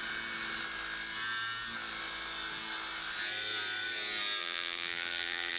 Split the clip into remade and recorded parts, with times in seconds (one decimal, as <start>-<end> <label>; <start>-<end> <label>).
0.0-4.4 recorded; 4.4-5.6 remade